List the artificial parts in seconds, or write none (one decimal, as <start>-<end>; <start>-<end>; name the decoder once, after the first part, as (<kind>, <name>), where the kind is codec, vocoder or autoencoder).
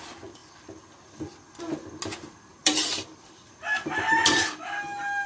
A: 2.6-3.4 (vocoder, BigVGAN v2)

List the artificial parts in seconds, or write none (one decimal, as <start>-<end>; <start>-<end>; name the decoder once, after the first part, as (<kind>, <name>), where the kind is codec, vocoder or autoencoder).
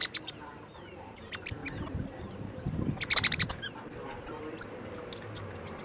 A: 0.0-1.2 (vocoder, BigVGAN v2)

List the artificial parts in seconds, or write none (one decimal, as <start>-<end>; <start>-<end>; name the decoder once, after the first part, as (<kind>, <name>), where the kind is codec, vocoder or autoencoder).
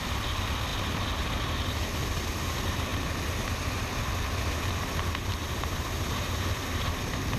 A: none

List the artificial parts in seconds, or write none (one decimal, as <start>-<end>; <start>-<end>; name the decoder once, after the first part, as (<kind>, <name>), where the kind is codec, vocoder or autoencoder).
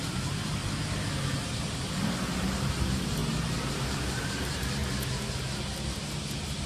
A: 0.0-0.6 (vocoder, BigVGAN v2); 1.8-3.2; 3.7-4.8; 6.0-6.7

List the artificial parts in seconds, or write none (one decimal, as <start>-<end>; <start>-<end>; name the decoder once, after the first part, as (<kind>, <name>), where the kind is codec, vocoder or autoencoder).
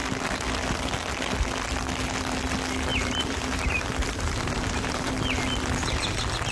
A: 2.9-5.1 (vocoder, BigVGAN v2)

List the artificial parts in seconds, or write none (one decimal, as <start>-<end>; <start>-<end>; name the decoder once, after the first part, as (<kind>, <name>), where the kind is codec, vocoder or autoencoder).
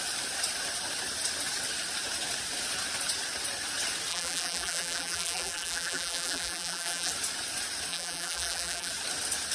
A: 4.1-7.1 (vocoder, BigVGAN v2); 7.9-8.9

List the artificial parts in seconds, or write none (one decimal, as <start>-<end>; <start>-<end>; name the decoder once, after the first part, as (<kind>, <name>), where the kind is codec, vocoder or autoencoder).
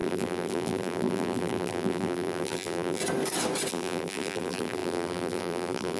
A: 0.0-3.0 (vocoder, BigVGAN v2); 3.7-6.0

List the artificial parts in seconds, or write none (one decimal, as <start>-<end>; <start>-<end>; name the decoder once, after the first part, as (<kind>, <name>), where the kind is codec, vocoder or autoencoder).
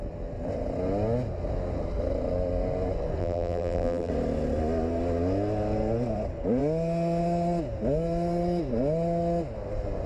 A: 3.2-4.1 (vocoder, BigVGAN v2)